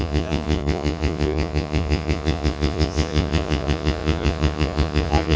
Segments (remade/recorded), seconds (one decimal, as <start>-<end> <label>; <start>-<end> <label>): 0.0-5.4 remade